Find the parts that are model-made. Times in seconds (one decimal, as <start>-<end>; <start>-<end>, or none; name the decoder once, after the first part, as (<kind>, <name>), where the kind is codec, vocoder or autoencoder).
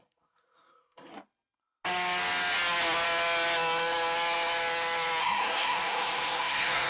0.0-1.1 (codec, SNAC); 5.2-6.9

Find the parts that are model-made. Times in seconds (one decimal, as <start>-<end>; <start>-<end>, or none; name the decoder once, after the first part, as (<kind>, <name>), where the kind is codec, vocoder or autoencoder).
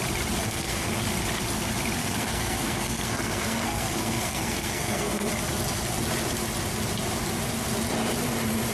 0.4-1.0 (codec, SNAC); 2.0-5.3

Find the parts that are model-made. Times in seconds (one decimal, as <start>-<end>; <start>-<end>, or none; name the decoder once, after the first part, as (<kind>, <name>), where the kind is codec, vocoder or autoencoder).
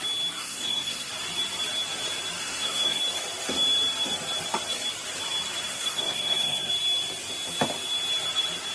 0.4-1.1 (codec, SNAC); 2.4-3.0; 5.7-6.7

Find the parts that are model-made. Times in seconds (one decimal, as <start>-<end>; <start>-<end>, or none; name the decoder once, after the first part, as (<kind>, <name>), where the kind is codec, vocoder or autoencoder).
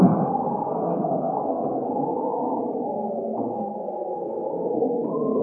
0.0-2.3 (codec, SNAC); 2.9-5.4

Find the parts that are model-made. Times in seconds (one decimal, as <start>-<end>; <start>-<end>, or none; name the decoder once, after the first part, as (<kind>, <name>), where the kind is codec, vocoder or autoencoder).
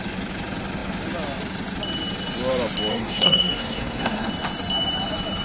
2.9-4.3 (codec, SNAC)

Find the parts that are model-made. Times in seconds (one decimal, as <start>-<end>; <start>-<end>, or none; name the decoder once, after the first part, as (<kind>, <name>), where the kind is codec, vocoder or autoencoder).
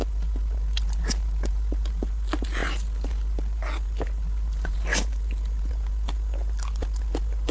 none